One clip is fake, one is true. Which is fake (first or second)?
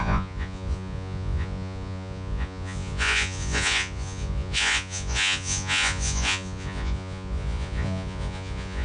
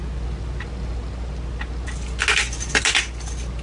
first